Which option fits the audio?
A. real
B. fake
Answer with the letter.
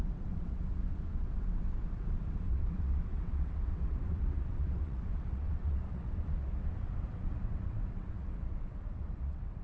B